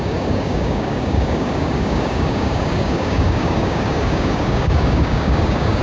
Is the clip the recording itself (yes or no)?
no